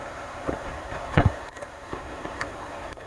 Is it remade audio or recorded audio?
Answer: remade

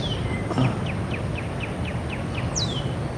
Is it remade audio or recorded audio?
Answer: recorded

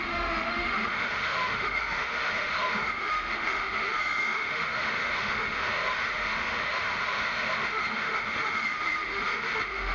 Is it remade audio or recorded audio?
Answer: remade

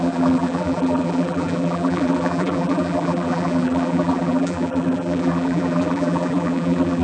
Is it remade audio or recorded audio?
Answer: remade